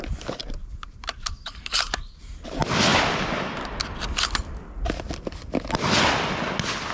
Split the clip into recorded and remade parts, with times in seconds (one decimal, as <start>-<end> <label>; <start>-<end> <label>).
0.0-0.4 recorded; 0.4-1.7 remade; 1.7-6.9 recorded